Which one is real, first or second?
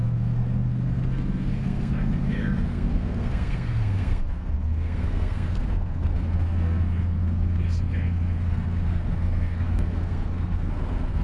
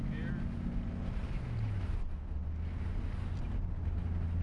second